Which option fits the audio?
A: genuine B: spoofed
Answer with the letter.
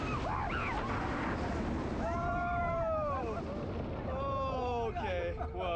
A